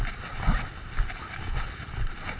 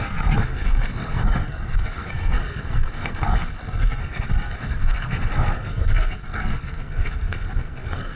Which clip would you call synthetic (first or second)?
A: second